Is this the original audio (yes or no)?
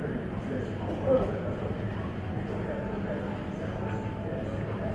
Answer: yes